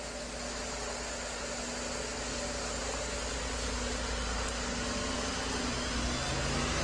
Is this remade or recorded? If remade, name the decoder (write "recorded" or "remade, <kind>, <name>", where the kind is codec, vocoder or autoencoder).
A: recorded